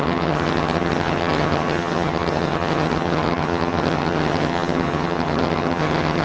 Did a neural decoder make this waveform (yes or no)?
yes